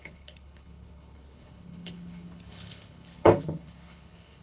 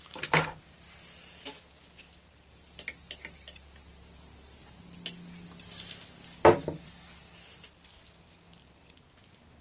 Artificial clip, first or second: first